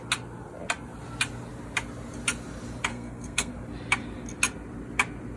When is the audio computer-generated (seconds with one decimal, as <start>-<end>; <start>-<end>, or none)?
2.9-3.5